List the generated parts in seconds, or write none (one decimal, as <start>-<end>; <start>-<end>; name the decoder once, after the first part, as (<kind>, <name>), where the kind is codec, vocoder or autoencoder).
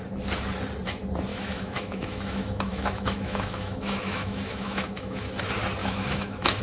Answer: 1.3-5.3 (autoencoder, DAC-VAE); 5.8-6.6